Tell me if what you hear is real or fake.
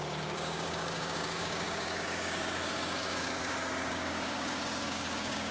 fake